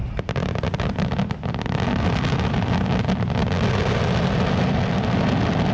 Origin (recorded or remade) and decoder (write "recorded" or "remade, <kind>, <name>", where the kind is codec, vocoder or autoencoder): recorded